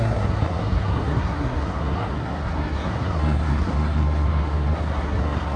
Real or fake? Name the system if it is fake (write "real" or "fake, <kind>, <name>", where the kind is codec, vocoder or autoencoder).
fake, codec, SNAC